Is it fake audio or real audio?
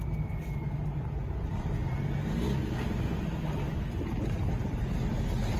real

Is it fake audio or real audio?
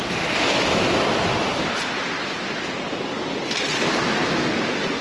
real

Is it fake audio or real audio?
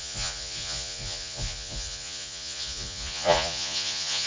fake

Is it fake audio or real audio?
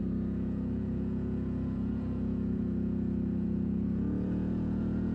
fake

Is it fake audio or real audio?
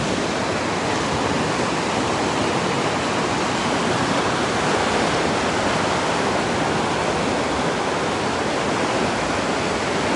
real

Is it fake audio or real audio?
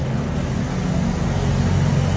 real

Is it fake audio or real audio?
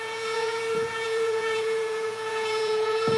fake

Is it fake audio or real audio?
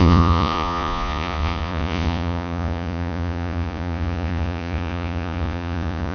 fake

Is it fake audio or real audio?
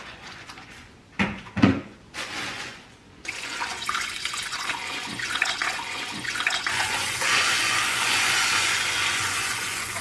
fake